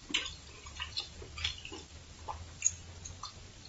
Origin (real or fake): real